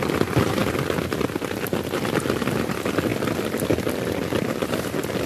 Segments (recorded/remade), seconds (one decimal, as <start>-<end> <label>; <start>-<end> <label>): 0.0-5.3 recorded